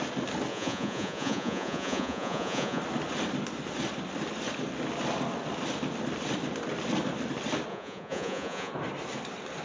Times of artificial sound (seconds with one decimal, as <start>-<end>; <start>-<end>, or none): 0.5-2.8; 7.7-8.7